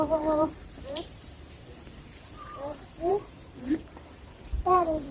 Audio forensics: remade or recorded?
remade